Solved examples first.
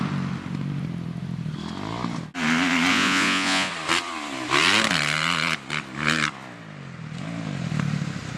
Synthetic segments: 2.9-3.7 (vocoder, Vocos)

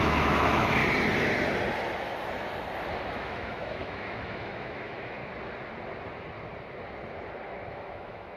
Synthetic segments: 0.0-0.8 (autoencoder, DAC-VAE); 3.1-5.2; 7.7-8.4

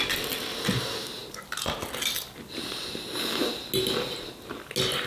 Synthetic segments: none

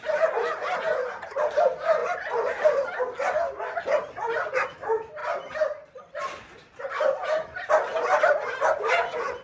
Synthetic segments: 2.0-3.0 (vocoder, BigVGAN v2); 5.2-6.8

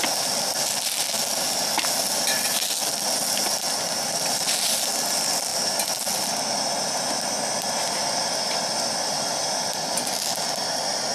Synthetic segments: none

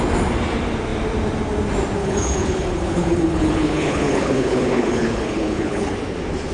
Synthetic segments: 2.0-5.9 (codec, HILCodec)

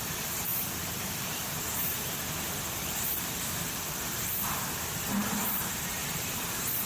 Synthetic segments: 0.0-6.9 (vocoder, BigVGAN v2)

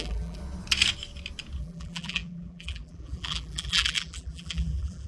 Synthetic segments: 0.0-0.4 (vocoder, BigVGAN v2); 1.6-5.1